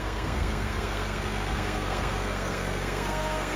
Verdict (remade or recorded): remade